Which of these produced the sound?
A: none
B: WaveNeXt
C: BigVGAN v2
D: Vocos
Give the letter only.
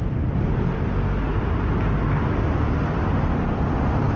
A